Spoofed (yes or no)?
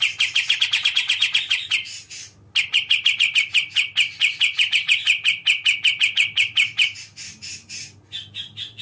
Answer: no